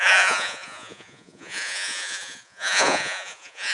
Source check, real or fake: fake